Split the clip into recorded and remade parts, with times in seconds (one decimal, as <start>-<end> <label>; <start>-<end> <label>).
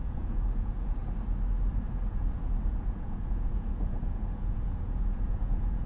0.0-1.0 remade; 1.0-2.1 recorded; 2.1-5.9 remade